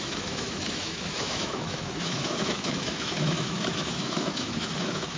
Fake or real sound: fake